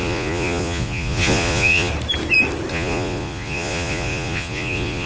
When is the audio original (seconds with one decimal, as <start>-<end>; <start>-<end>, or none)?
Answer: 1.9-2.7